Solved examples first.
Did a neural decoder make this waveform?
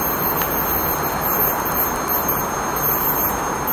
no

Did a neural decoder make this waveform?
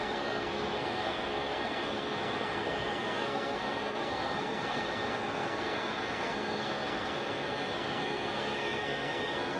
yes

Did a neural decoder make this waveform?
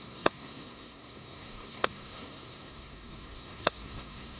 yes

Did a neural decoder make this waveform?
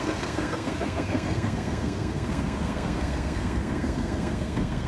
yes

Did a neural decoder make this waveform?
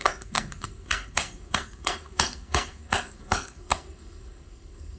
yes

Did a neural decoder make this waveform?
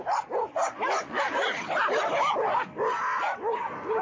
no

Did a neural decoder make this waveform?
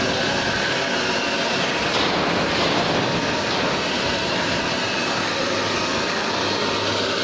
no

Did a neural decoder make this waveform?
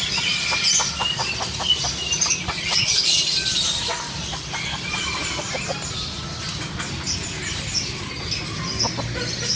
no